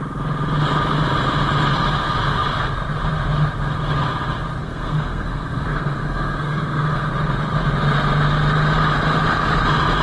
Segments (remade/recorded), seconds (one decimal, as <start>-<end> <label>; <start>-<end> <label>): 0.0-4.6 recorded; 4.6-7.1 remade; 7.1-10.0 recorded